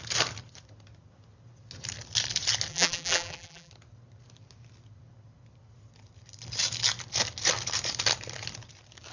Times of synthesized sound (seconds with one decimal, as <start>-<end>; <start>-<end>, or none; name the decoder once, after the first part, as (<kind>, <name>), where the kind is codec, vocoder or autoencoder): 2.7-3.7 (vocoder, BigVGAN v2)